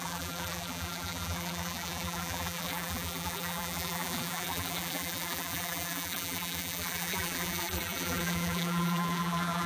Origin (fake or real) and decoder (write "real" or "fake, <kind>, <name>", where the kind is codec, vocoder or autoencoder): fake, vocoder, BigVGAN v2